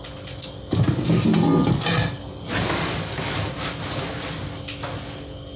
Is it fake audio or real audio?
real